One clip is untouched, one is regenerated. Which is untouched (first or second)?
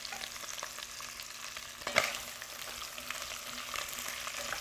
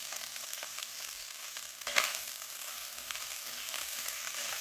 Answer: first